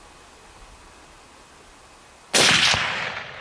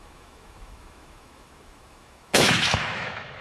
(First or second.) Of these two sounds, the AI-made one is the second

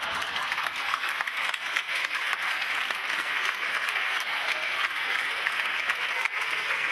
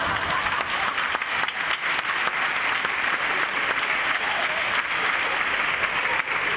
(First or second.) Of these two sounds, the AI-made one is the first